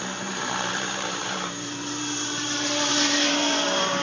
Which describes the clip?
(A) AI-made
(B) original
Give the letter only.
A